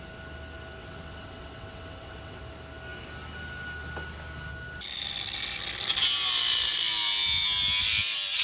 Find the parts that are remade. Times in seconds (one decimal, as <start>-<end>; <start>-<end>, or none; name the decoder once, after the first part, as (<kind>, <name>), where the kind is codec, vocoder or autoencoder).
0.8-2.4 (vocoder, WaveNeXt)